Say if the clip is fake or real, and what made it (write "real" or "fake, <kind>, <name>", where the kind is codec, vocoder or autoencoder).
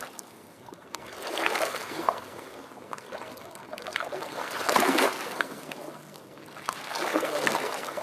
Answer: fake, codec, SNAC